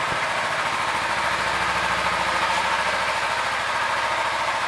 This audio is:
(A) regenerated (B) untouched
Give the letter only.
B